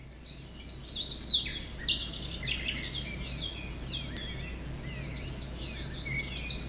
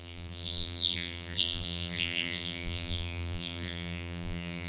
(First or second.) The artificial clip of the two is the second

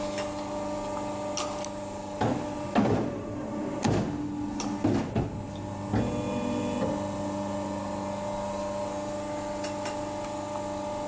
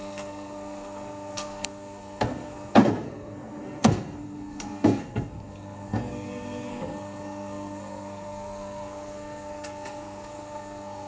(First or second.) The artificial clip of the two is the second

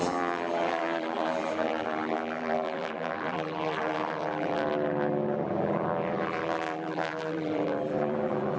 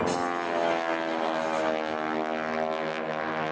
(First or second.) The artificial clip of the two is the first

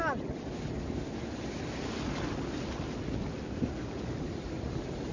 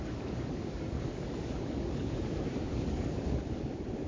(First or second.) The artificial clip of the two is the second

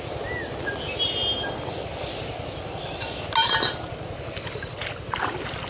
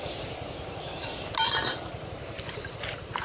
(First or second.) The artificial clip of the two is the second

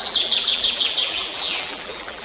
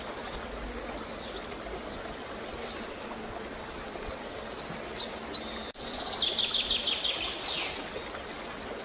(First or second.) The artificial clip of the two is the first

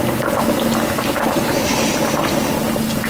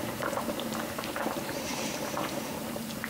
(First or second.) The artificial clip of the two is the second